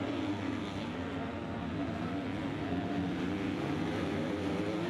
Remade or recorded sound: recorded